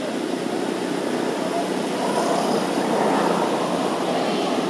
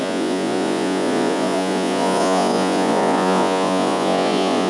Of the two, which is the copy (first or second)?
second